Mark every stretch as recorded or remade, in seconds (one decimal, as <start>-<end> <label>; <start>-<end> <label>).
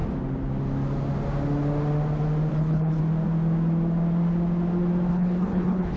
0.0-2.5 recorded; 2.5-3.0 remade; 3.0-5.1 recorded; 5.1-6.0 remade